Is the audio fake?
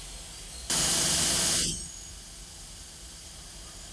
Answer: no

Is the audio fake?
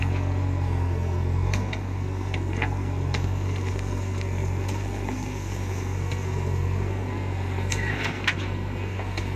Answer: yes